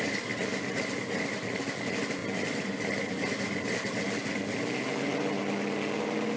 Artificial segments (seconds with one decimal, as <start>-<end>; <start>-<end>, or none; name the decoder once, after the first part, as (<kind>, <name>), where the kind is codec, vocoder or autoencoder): none

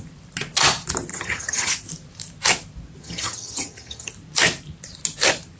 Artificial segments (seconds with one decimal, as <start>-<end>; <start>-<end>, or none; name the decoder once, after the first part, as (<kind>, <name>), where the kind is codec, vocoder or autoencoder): 1.1-1.7 (vocoder, HiFi-GAN); 3.0-4.1

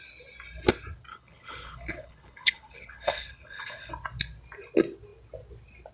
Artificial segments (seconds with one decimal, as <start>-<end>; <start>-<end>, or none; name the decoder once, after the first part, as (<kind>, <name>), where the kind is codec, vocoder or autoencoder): 1.1-3.9 (codec, HILCodec)

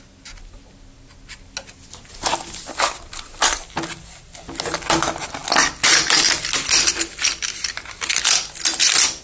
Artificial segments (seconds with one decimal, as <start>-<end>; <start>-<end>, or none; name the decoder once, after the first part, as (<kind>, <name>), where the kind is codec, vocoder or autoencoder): none

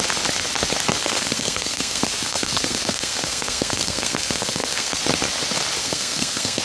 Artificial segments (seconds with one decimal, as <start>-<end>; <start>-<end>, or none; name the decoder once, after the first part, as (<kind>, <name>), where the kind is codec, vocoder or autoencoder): 1.0-5.0 (codec, SNAC); 5.8-6.6